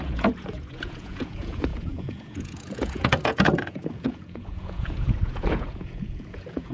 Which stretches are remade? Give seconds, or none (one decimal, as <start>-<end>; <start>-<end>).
0.0-6.7